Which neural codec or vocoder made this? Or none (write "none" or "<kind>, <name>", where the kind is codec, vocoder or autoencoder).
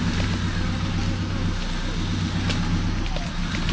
none